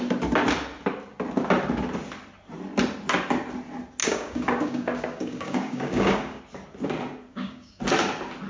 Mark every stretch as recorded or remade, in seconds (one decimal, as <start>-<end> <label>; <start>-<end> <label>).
0.0-4.0 recorded; 4.0-6.4 remade; 6.4-7.3 recorded; 7.3-7.8 remade; 7.8-8.5 recorded